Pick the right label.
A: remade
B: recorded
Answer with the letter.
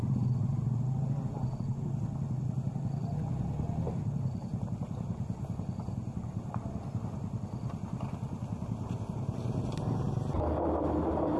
B